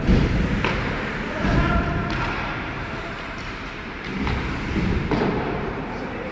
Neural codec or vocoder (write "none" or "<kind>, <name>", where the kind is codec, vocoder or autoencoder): vocoder, BigVGAN v2